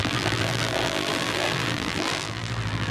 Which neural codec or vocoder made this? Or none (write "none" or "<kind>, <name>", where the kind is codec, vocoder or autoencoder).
vocoder, BigVGAN v2